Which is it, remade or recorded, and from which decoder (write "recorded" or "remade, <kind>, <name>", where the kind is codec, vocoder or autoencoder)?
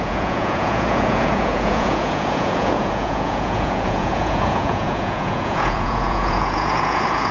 remade, vocoder, Vocos